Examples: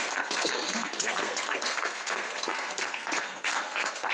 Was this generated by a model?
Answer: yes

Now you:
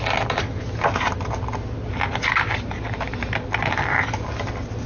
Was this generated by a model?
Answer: no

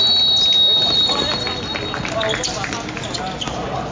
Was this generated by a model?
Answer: no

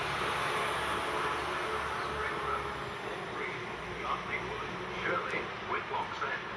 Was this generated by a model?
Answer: no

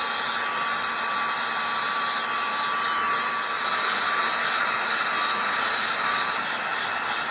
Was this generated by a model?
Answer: no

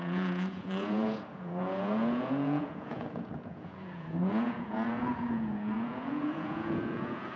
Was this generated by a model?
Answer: yes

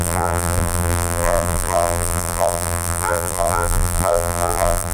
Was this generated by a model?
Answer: yes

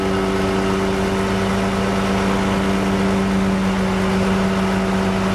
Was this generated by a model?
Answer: no